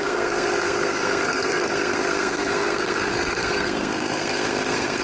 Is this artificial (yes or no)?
yes